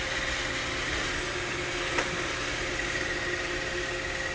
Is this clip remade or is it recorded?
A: recorded